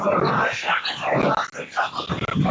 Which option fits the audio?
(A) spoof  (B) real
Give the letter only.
B